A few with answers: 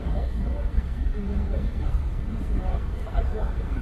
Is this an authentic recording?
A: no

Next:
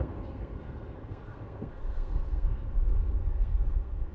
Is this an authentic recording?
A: no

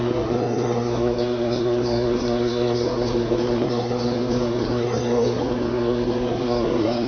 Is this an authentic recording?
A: no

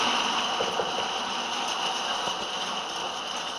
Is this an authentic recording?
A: yes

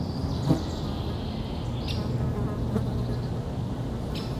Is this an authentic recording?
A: yes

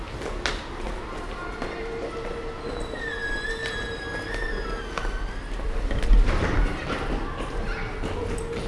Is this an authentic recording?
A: yes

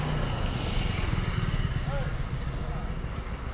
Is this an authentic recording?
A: yes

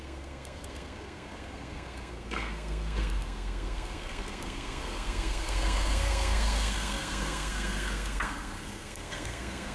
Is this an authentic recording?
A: no